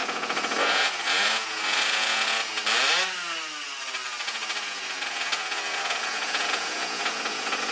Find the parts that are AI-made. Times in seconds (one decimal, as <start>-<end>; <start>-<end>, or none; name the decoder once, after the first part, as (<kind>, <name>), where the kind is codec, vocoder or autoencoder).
0.0-2.6 (vocoder, Vocos); 4.2-7.7